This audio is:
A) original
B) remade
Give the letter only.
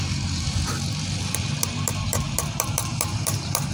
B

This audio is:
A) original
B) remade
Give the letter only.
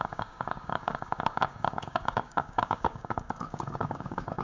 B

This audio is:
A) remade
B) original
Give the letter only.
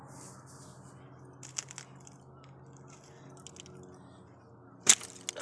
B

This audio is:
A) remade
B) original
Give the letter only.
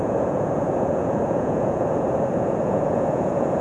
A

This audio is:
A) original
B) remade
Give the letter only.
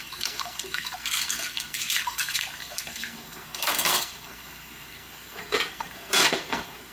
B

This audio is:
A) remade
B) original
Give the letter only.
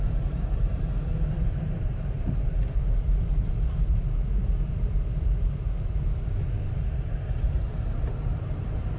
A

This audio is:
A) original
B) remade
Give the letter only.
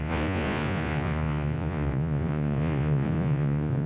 B